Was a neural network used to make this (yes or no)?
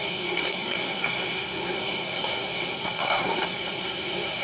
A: yes